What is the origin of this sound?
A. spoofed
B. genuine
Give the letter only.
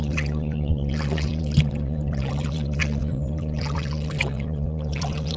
A